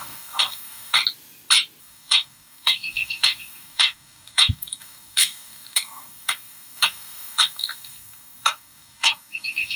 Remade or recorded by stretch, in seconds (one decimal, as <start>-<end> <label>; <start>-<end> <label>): 0.0-1.0 remade; 1.0-1.8 recorded; 1.8-9.8 remade